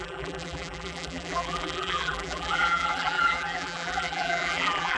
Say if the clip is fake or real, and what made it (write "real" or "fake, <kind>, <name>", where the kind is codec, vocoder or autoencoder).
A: fake, vocoder, BigVGAN v2